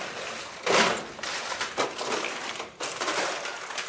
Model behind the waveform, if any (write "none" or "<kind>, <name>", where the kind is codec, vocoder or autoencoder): none